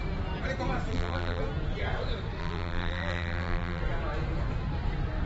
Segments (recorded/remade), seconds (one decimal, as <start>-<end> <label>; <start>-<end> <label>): 0.0-0.9 recorded; 0.9-1.4 remade; 1.4-2.4 recorded; 2.4-3.8 remade; 3.8-5.3 recorded